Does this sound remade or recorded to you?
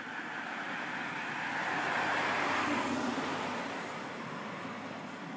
recorded